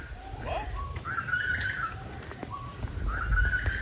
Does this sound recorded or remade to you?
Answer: recorded